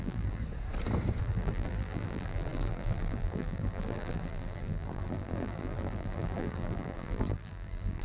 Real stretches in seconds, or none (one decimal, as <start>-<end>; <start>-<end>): 0.4-1.2